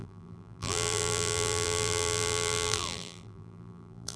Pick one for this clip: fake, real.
fake